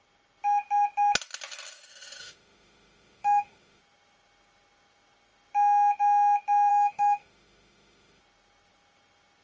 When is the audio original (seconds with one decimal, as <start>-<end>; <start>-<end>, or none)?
0.0-2.2; 3.8-6.7; 8.2-9.4